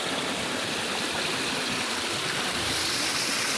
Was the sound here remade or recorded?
recorded